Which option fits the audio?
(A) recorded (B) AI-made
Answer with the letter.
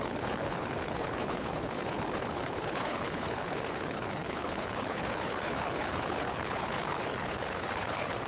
B